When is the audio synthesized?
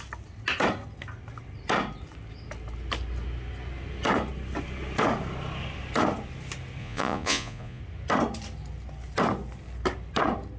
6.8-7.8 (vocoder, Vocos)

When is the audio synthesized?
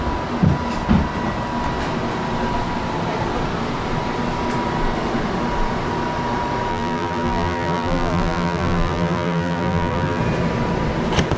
6.7-10.2 (vocoder, BigVGAN v2)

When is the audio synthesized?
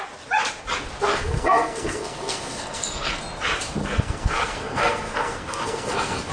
1.1-3.2 (codec, SNAC); 3.8-6.3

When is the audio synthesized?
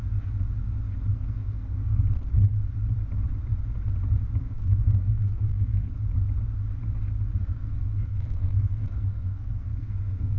1.1-2.0 (codec, SNAC); 4.4-5.9; 7.4-10.4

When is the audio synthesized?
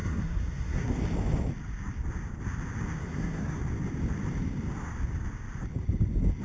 0.0-1.0 (codec, SNAC); 3.0-3.6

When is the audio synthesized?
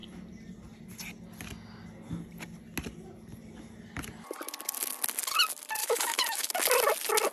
5.8-6.5 (autoencoder, DAC-VAE)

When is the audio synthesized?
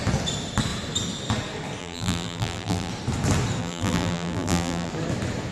1.8-2.9 (vocoder, BigVGAN v2); 3.6-4.9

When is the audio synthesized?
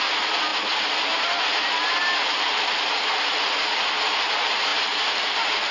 none